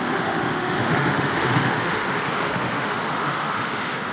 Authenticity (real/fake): fake